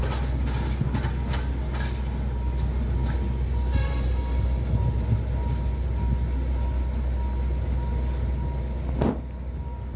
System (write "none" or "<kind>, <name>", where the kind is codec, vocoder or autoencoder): none